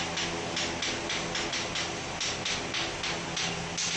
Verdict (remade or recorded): recorded